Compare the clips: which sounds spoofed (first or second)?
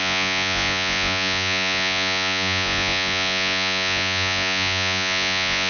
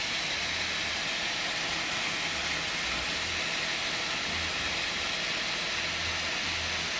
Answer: first